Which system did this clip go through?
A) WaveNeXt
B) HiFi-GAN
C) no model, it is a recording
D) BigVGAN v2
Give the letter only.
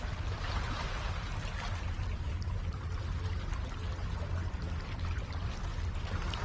C